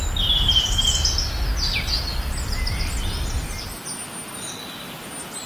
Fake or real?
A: real